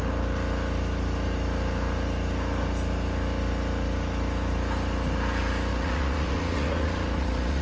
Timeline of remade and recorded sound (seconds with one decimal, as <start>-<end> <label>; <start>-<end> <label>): 0.0-5.7 recorded; 5.7-7.6 remade

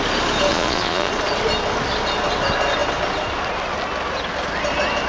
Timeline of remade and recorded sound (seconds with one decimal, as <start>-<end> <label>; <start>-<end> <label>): 0.0-0.5 recorded; 0.5-1.1 remade; 1.1-5.1 recorded

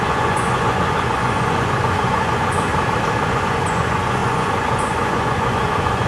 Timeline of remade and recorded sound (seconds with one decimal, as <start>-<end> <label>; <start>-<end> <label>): 0.0-2.7 remade; 2.7-3.3 recorded; 3.3-6.1 remade